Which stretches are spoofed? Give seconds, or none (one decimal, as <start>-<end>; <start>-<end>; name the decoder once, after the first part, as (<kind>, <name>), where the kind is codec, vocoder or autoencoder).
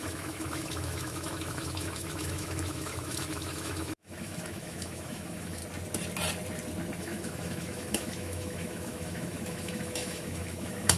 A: 0.0-5.6 (autoencoder, DAC-VAE); 7.0-11.0